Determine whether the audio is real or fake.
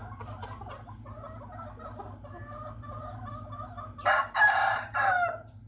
real